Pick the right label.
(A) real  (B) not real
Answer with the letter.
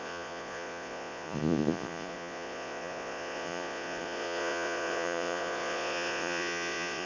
B